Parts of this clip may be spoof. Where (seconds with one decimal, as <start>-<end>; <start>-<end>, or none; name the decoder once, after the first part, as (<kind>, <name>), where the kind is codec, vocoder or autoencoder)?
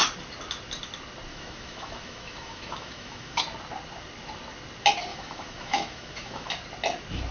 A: 1.3-3.4 (autoencoder, DAC-VAE); 5.1-6.5